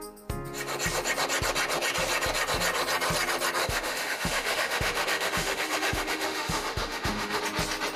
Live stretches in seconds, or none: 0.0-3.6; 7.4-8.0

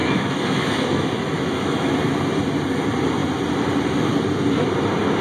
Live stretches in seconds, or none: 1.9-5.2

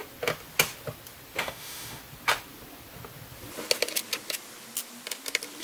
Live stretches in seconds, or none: 0.0-1.4; 2.0-5.6

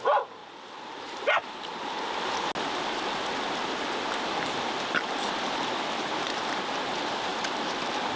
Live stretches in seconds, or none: 0.0-8.2

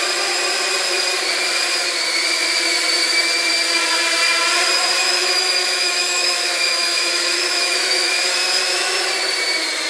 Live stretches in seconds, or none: 0.0-5.0; 8.1-9.9

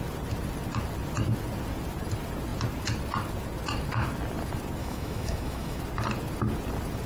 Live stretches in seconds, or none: 0.0-4.8; 5.8-7.1

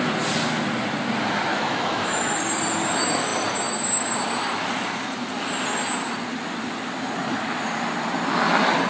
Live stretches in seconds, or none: 0.0-1.5; 2.4-8.9

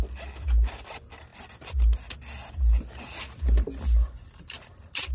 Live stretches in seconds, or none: 0.0-5.1